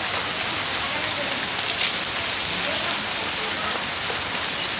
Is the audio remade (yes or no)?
no